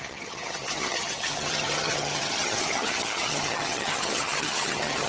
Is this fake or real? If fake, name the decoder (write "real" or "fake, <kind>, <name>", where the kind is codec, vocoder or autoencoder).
fake, vocoder, HiFi-GAN